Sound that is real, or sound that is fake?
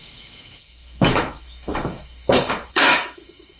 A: fake